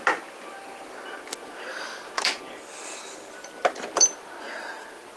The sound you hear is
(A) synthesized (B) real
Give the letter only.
B